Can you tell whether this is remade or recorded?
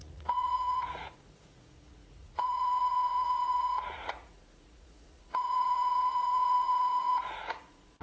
remade